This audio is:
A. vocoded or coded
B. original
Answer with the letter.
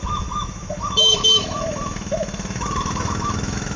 A